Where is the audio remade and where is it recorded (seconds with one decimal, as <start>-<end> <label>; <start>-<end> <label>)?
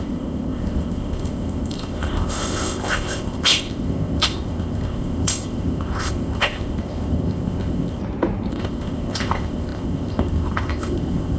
0.0-8.0 remade; 8.0-8.5 recorded; 8.5-11.4 remade